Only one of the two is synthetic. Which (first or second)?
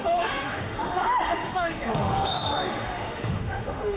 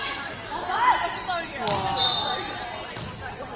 first